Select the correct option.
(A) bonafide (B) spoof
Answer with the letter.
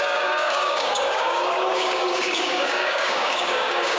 B